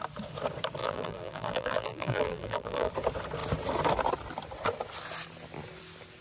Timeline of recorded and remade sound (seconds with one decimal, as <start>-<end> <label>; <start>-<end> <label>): 0.0-0.8 recorded; 0.8-2.9 remade; 2.9-6.2 recorded